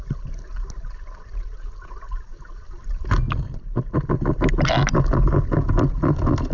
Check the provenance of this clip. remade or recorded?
recorded